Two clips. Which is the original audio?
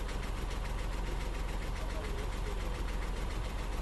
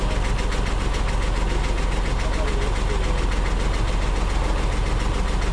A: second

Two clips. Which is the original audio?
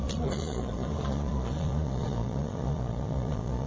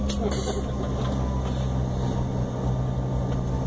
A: second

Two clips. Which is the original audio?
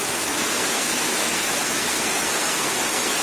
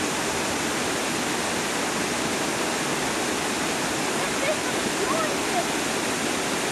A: second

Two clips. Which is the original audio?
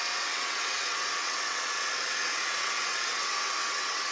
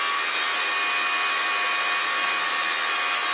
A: second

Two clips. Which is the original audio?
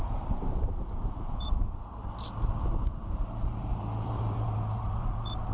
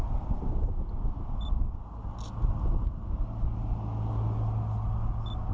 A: second